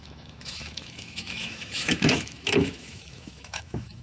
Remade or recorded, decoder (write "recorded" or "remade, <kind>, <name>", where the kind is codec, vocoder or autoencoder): remade, autoencoder, DAC-VAE